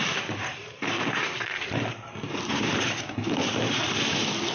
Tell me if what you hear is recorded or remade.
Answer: remade